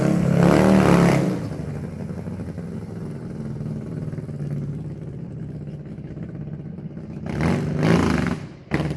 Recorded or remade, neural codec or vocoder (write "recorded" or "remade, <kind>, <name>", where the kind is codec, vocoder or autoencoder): recorded